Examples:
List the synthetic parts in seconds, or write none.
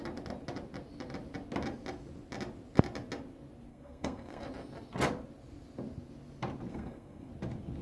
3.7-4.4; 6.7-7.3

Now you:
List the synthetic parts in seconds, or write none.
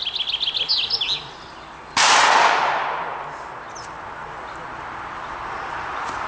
none